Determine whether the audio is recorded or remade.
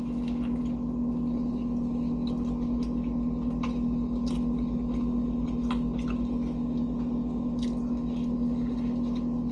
recorded